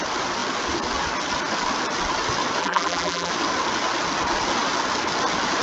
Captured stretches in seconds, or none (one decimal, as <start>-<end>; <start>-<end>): 0.0-2.6; 3.3-5.6